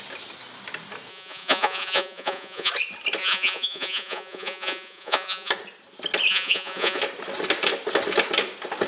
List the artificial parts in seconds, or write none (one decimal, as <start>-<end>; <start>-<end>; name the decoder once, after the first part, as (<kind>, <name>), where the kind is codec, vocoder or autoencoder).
1.1-2.7 (vocoder, Vocos); 3.2-5.5; 6.3-7.0